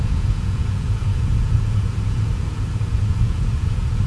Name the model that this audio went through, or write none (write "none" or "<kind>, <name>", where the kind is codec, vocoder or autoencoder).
vocoder, Vocos